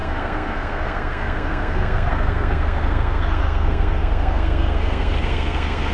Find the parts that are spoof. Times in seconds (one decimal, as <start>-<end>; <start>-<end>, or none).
0.0-5.9